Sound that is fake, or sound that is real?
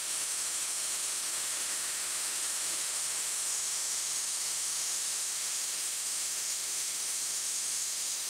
fake